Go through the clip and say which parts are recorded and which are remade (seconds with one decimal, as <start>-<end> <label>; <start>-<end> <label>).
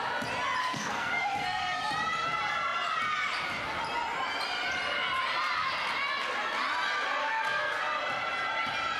0.0-0.6 recorded; 0.6-1.9 remade; 1.9-7.2 recorded; 7.2-7.8 remade; 7.8-9.0 recorded